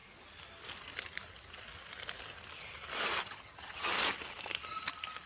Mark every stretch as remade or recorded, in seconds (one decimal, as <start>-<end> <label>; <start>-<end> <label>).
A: 0.0-3.2 recorded; 3.2-3.9 remade; 3.9-5.3 recorded